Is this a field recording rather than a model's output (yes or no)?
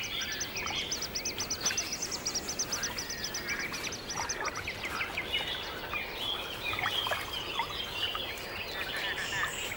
yes